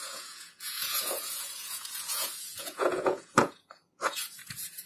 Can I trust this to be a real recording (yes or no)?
no